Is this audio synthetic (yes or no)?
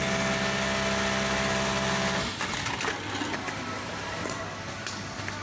no